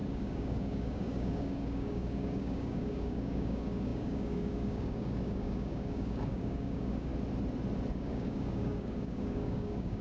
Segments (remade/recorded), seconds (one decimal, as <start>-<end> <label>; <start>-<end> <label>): 0.0-7.1 remade; 7.1-7.9 recorded; 7.9-10.0 remade